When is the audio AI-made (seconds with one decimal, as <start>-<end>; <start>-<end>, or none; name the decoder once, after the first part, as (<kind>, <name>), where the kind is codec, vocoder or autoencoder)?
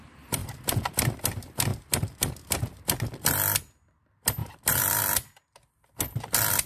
0.4-1.2 (vocoder, BigVGAN v2); 4.4-5.0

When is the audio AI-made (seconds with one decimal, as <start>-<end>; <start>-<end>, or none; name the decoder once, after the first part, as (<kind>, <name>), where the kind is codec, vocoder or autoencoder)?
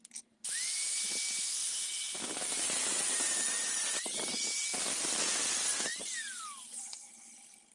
1.6-5.5 (vocoder, BigVGAN v2); 5.9-6.4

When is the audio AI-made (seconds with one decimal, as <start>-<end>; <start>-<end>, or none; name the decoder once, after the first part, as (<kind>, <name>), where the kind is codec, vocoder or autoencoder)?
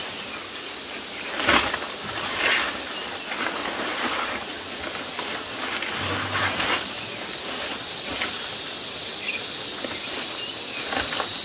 none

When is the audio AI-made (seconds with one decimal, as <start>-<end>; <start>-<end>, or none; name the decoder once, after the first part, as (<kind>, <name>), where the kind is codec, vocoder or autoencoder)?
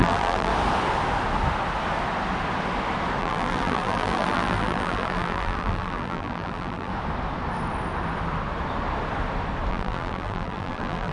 0.0-0.5 (vocoder, BigVGAN v2); 3.2-6.9; 9.7-11.1